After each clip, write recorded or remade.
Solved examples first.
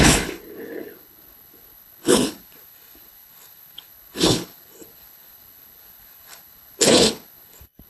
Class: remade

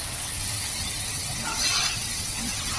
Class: remade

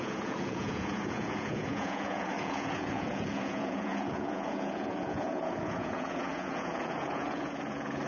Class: remade